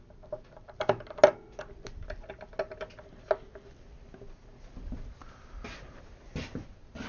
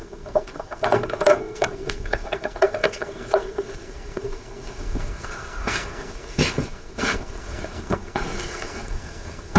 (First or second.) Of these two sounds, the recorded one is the first